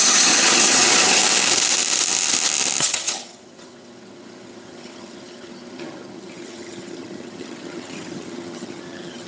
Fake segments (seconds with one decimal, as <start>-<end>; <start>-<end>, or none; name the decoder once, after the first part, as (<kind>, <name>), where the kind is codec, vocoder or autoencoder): 0.0-1.2 (vocoder, HiFi-GAN); 2.8-9.3